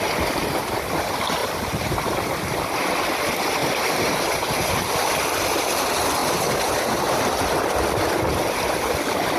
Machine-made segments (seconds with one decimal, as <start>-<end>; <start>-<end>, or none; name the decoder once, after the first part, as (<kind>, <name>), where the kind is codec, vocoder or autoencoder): 3.6-4.9 (vocoder, BigVGAN v2); 6.2-7.2